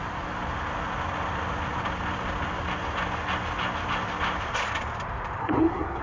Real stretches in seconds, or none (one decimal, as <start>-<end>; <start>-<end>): 0.0-5.4

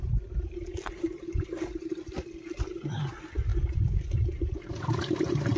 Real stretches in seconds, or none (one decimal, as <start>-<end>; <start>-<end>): 0.0-5.6

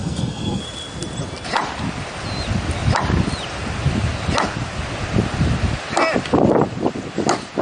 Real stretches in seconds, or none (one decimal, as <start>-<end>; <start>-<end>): 0.6-7.6

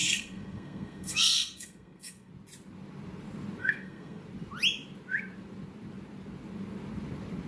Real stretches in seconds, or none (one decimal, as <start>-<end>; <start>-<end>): 2.3-3.6; 4.2-7.5

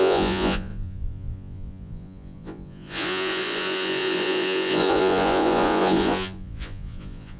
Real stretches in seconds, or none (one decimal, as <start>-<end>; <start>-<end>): none

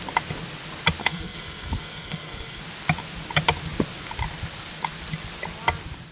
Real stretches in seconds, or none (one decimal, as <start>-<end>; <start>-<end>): 0.0-1.0; 2.6-6.1

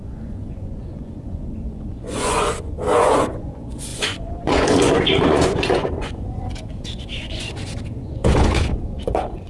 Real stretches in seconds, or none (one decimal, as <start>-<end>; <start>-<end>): none